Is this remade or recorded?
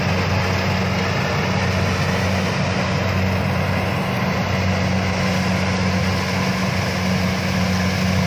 recorded